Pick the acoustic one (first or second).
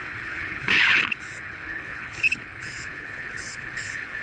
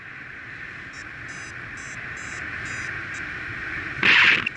second